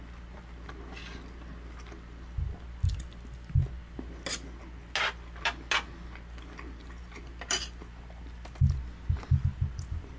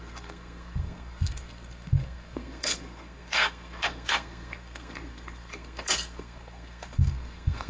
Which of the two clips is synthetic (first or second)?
second